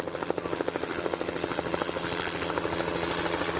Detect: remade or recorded recorded